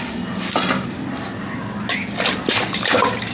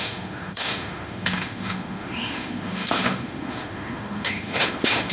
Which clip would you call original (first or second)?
first